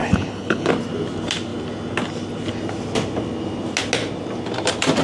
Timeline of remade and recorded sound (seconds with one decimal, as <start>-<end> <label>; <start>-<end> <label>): 0.0-0.7 remade; 0.7-5.0 recorded